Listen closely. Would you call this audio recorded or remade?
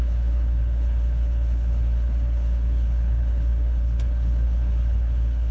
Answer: remade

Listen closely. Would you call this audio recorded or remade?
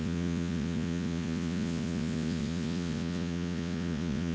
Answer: remade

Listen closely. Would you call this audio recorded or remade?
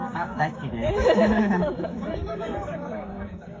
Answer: remade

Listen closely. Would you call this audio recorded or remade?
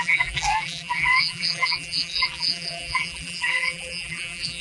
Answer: remade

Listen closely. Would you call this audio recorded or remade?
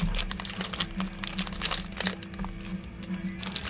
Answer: recorded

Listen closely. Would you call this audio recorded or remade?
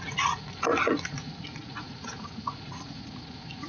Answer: remade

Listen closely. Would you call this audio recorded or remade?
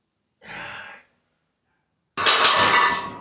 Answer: recorded